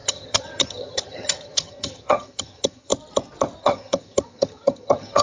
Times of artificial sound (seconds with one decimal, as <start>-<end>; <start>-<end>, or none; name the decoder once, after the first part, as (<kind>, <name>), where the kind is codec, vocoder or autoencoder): 0.0-2.9 (vocoder, HiFi-GAN); 3.6-5.2